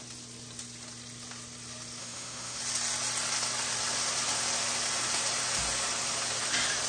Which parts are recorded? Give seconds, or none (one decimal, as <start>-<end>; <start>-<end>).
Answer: 0.0-2.0; 2.6-6.9